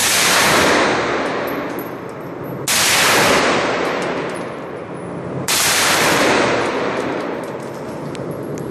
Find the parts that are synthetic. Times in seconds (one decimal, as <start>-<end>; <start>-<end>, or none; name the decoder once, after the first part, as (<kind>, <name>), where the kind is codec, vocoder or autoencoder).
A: 3.4-8.7 (vocoder, BigVGAN v2)